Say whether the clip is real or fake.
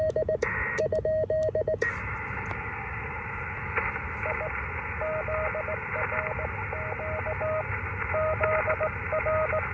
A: real